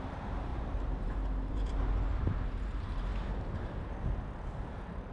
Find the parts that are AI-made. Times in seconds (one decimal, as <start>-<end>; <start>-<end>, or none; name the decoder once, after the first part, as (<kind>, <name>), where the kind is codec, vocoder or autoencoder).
0.0-3.1 (vocoder, BigVGAN v2); 4.5-5.1